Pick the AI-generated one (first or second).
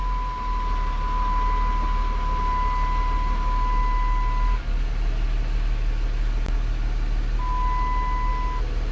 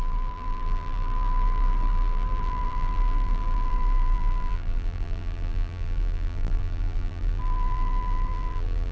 second